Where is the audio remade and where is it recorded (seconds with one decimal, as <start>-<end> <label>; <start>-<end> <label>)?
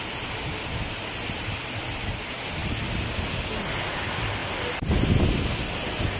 0.0-6.2 recorded